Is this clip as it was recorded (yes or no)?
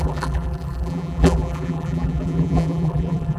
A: no